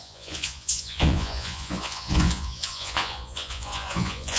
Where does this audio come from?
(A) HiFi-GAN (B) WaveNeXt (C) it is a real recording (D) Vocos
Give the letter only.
D